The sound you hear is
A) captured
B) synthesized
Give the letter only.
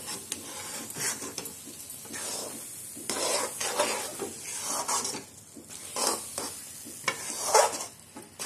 A